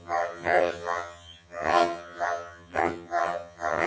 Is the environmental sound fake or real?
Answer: fake